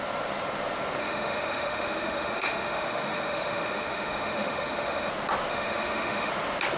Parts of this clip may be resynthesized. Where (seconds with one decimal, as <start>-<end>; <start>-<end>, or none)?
1.0-5.1; 5.5-6.3